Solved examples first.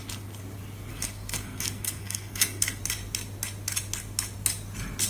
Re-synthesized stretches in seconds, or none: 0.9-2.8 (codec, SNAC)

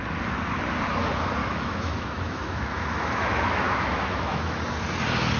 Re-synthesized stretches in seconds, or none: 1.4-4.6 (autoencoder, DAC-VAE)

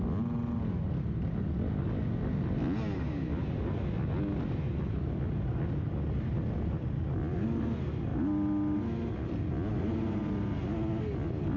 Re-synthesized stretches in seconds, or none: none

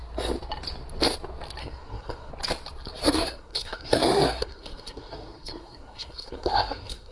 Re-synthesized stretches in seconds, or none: 1.6-2.3 (codec, SNAC); 3.0-7.1

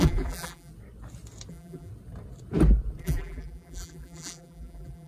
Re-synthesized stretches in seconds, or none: 0.0-0.7 (vocoder, BigVGAN v2); 1.5-1.9; 3.0-5.1

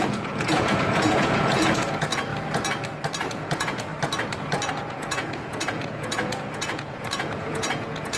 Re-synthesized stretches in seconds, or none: 0.0-2.3 (vocoder, Vocos); 3.3-3.9; 4.7-8.2